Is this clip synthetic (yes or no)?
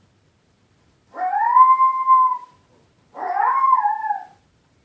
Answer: yes